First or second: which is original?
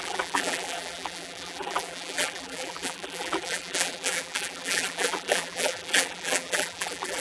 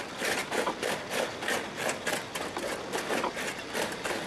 second